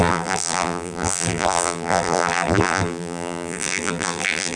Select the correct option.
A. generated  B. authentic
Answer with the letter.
A